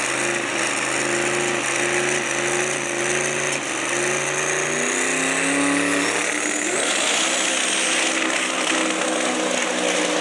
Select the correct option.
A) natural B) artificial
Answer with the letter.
A